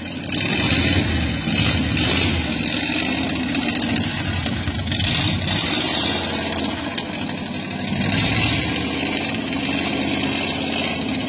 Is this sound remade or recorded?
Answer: recorded